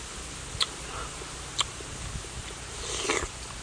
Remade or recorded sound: recorded